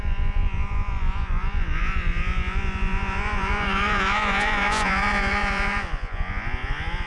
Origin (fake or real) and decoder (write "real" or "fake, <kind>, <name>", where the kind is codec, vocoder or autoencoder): fake, vocoder, Vocos